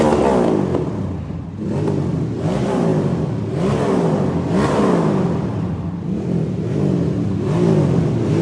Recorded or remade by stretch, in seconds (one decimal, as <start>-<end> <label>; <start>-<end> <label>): 0.0-8.4 recorded